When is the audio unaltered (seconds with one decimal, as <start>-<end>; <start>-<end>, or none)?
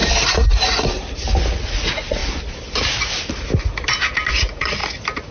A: 0.0-1.5; 2.2-4.3; 4.8-5.3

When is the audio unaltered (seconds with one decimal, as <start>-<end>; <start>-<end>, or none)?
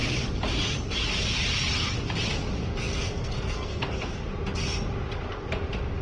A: 0.0-2.6; 3.9-6.0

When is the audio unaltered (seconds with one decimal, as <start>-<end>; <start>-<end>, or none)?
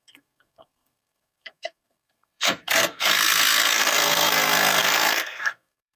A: none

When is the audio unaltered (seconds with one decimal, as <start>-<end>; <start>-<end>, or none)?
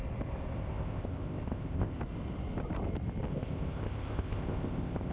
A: 0.0-0.7; 2.0-3.3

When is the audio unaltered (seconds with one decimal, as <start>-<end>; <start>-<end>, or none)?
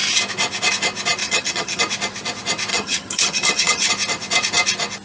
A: 0.0-1.2; 1.8-2.7; 3.9-5.0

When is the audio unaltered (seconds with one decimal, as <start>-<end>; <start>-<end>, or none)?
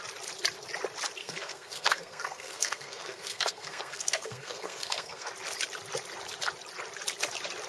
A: 0.0-1.2; 5.3-7.7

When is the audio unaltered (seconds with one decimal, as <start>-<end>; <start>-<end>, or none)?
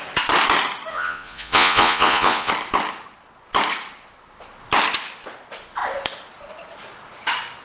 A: 0.0-0.9; 2.5-7.6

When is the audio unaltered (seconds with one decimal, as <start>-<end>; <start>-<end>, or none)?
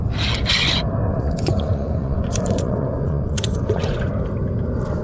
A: 0.0-1.1; 4.1-5.0